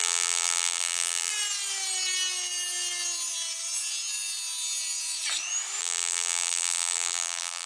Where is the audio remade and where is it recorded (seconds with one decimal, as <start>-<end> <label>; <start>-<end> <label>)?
0.0-1.3 remade; 1.3-5.8 recorded; 5.8-7.7 remade

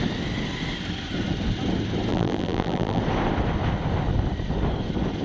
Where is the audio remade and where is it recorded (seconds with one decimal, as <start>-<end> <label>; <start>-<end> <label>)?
0.0-2.1 recorded; 2.1-3.0 remade; 3.0-5.2 recorded

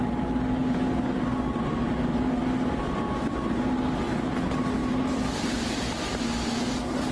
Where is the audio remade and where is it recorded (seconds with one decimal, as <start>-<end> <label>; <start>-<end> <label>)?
0.0-4.8 recorded; 4.8-5.7 remade; 5.7-7.1 recorded

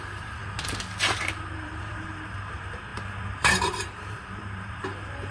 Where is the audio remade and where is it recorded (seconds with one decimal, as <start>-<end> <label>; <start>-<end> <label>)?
0.0-0.4 remade; 0.4-1.0 recorded; 1.0-5.3 remade

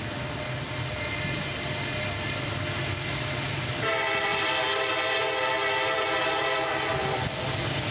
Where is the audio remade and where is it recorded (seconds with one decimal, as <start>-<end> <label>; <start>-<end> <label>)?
0.0-4.3 recorded; 4.3-4.9 remade; 4.9-6.2 recorded; 6.2-7.9 remade